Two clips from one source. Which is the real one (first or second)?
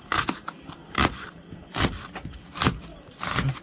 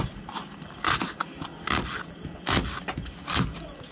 second